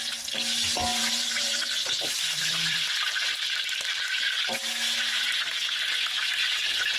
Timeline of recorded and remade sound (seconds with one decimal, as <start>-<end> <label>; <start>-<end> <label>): 0.0-1.0 recorded; 1.0-4.5 remade; 4.5-7.0 recorded